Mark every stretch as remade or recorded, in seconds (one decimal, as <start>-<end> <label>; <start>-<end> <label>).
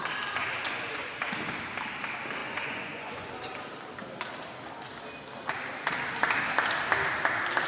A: 0.0-0.6 recorded; 0.6-1.2 remade; 1.2-2.4 recorded; 2.4-3.3 remade; 3.3-7.7 recorded